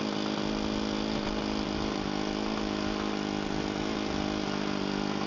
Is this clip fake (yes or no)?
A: no